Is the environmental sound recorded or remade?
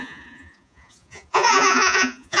remade